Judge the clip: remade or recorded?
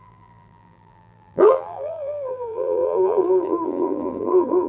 remade